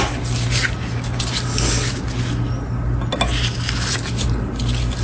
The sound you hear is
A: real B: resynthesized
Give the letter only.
A